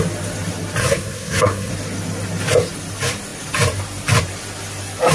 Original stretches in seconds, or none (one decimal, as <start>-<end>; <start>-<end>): 0.0-0.8; 1.7-5.1